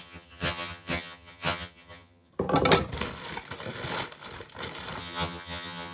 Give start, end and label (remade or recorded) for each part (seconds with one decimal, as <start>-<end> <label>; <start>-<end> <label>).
0.0-2.3 remade; 2.3-5.0 recorded; 5.0-5.9 remade